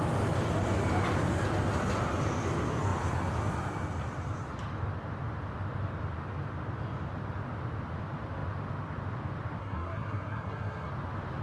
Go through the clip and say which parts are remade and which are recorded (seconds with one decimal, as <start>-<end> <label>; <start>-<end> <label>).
0.0-9.6 recorded; 9.6-10.9 remade; 10.9-11.4 recorded